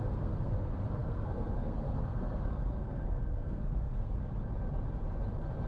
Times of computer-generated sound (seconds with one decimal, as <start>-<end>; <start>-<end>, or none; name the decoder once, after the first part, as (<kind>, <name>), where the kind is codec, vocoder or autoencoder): 0.0-4.2 (codec, SNAC)